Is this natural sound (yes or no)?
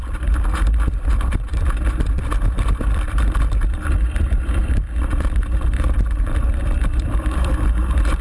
no